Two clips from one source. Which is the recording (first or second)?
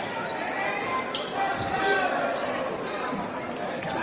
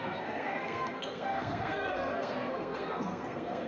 first